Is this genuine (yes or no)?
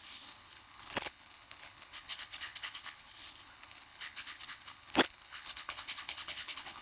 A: no